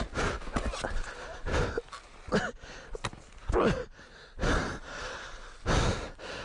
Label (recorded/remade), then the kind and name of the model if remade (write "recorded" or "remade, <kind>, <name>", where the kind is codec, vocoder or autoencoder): recorded